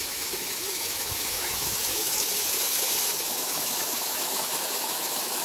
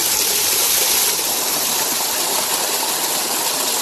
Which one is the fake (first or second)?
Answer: first